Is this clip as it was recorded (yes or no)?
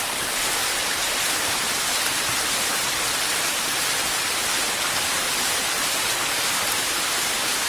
no